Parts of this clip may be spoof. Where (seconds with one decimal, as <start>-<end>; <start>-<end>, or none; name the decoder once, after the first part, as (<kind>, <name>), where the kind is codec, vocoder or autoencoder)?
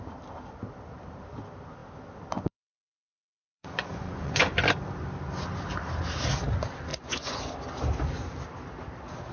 3.5-4.5 (vocoder, Vocos); 6.9-7.4